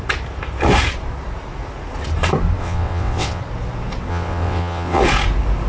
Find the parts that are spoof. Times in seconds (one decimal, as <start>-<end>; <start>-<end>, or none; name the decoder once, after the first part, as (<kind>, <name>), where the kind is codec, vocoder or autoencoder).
2.6-3.4 (vocoder, WaveNeXt); 4.1-5.0